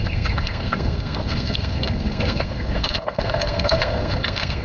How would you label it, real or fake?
fake